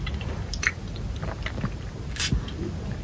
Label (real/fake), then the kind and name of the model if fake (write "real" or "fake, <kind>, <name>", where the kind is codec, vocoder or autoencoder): real